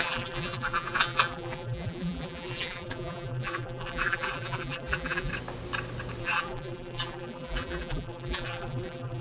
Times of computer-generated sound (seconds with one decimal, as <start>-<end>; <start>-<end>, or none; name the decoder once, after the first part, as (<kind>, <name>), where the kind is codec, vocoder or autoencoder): 0.0-5.3 (vocoder, BigVGAN v2); 6.2-9.2